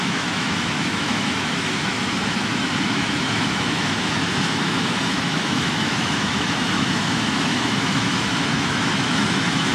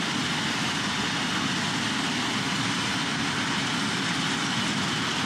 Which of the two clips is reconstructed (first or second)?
first